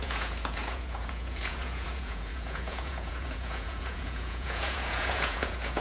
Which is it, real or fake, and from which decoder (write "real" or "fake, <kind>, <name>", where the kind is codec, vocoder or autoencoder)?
fake, vocoder, Vocos